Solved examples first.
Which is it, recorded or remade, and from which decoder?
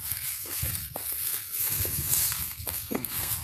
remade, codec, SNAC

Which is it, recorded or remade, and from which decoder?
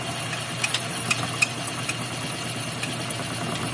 recorded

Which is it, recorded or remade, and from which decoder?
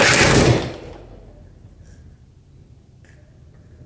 recorded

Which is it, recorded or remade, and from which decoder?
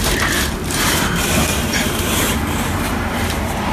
remade, vocoder, BigVGAN v2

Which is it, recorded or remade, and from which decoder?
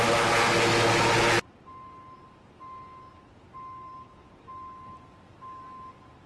recorded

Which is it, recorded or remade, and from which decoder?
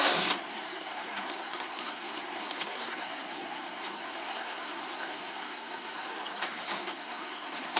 remade, codec, SNAC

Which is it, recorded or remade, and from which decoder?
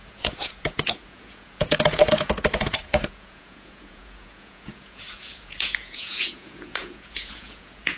remade, vocoder, Vocos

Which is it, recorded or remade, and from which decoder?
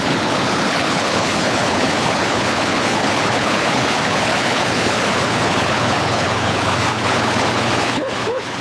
remade, codec, HILCodec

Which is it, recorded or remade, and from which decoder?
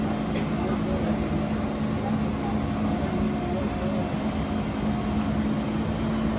recorded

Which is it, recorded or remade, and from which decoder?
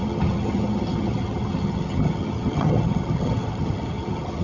remade, vocoder, HiFi-GAN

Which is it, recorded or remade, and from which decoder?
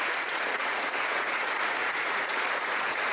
remade, vocoder, Vocos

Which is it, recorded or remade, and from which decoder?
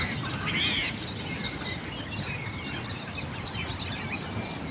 recorded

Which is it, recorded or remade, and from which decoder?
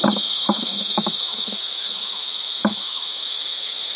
remade, autoencoder, DAC-VAE